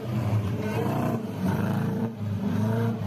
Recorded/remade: remade